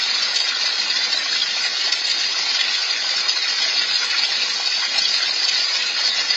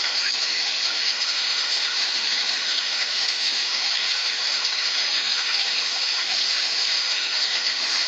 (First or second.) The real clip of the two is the first